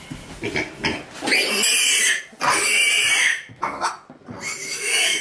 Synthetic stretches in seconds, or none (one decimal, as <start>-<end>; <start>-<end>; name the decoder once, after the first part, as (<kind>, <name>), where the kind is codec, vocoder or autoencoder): 3.2-3.9 (autoencoder, DAC-VAE); 4.6-5.2